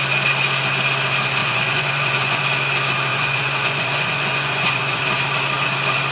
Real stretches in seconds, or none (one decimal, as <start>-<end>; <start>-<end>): 0.0-1.4; 2.4-3.1; 5.0-6.1